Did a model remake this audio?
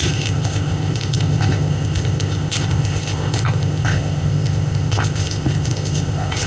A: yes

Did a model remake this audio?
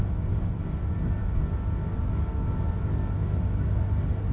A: no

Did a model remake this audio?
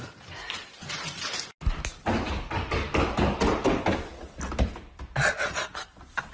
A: no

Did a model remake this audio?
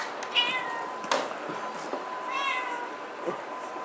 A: no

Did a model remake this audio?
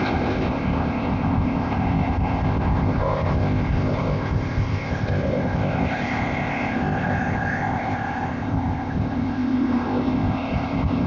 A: yes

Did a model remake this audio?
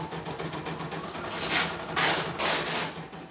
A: no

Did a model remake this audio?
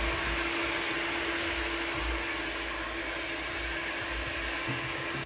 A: no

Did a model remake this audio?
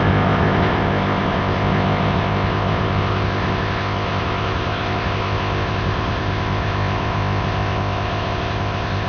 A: yes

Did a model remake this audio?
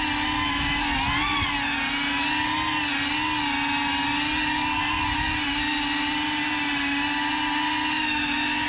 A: no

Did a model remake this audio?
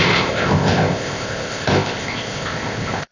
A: yes